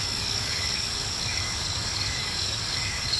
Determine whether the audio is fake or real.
fake